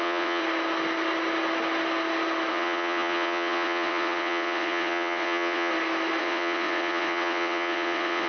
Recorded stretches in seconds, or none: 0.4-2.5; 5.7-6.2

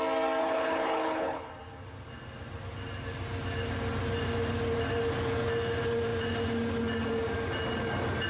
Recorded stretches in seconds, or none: 0.0-0.4; 1.5-8.3

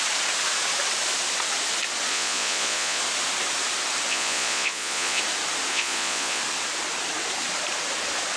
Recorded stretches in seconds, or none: 0.0-2.1; 3.0-4.1; 5.2-5.7; 6.4-8.4

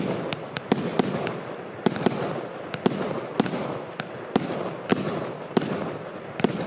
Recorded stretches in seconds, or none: 0.0-6.7

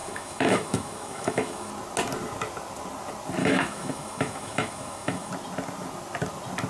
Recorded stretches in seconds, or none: 1.7-3.4; 5.3-6.7

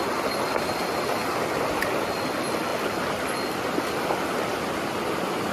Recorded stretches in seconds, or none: 0.0-5.5

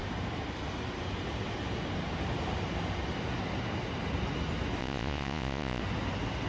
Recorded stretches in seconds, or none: 0.0-4.8; 5.8-6.5

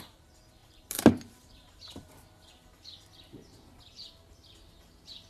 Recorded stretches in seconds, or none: 0.0-0.6; 3.8-5.3